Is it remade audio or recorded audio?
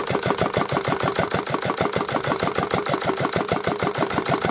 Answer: recorded